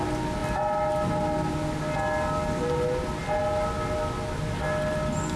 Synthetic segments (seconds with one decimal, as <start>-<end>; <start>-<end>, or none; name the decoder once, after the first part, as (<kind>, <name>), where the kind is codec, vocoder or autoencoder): none